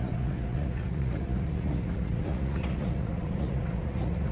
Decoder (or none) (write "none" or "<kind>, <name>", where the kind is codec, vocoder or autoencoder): vocoder, Vocos